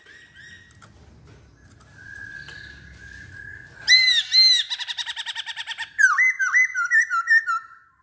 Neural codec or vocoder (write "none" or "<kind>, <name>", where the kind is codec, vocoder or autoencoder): none